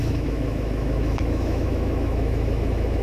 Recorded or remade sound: remade